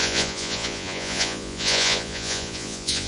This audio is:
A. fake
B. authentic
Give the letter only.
A